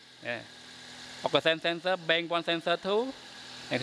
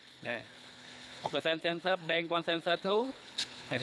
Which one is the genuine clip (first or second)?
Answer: first